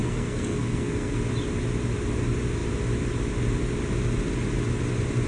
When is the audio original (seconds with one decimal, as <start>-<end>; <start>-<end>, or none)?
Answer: 1.2-5.3

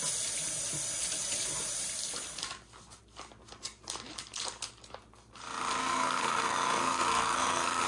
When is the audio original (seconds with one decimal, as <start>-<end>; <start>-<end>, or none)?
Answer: 0.0-5.8

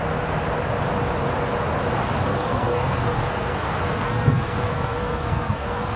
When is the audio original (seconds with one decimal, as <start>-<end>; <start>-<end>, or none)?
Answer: 0.0-2.3